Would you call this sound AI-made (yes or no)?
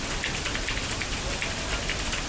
no